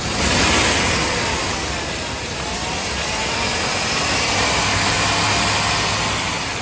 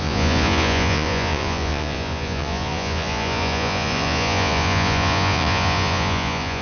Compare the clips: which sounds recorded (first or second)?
first